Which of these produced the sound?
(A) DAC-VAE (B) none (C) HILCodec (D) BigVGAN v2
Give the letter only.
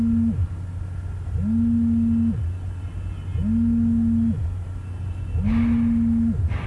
B